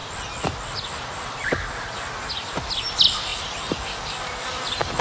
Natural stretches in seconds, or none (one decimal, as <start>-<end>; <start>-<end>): 0.0-5.0